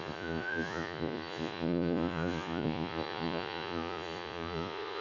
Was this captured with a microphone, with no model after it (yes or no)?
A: no